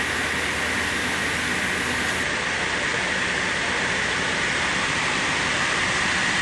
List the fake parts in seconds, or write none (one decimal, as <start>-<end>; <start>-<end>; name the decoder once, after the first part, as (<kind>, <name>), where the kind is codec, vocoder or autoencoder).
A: 2.9-5.4 (vocoder, BigVGAN v2)